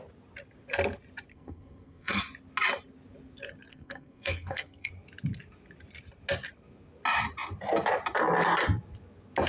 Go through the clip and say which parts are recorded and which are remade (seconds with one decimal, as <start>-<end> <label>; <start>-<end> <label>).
0.0-1.3 recorded; 1.3-2.2 remade; 2.2-3.7 recorded; 3.7-4.9 remade; 4.9-9.5 recorded